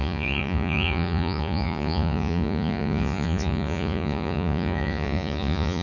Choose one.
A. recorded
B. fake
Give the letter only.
B